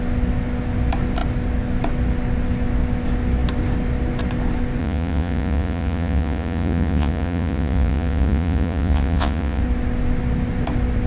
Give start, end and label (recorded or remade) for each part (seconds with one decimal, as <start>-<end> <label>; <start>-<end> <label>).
0.0-4.8 recorded; 4.8-9.6 remade; 9.6-11.1 recorded